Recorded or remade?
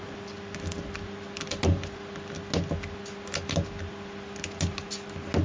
recorded